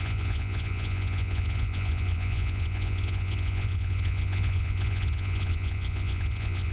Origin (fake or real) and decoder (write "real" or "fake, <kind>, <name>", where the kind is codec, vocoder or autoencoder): fake, vocoder, Vocos